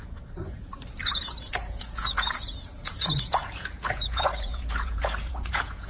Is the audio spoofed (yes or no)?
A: yes